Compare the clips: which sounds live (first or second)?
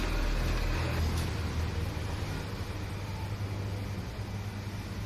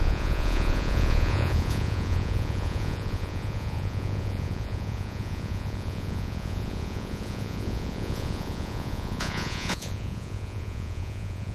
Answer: first